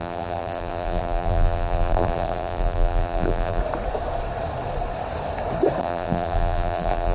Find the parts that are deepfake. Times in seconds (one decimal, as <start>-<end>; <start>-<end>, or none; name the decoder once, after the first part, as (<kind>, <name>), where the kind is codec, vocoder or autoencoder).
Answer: 0.0-3.6 (vocoder, BigVGAN v2); 5.8-7.1